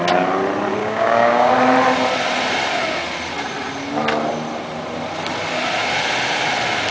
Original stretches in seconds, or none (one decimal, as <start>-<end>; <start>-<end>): 0.0-0.8; 1.5-6.9